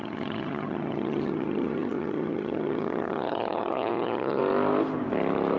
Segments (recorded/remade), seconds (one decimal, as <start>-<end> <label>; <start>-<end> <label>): 0.0-4.4 remade; 4.4-5.6 recorded